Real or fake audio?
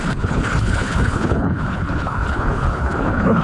fake